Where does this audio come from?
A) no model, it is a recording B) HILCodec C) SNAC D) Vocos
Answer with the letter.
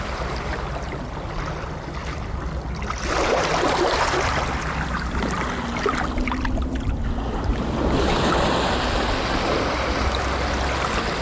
A